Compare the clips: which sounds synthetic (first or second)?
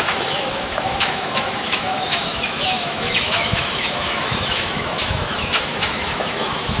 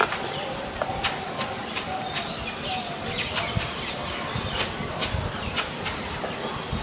first